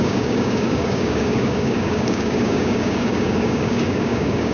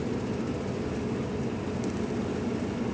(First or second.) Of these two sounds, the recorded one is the second